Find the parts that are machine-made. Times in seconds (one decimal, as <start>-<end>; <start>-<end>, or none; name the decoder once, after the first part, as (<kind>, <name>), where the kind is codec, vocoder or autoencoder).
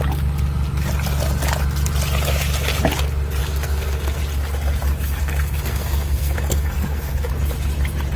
3.4-4.2 (codec, SNAC); 5.2-7.3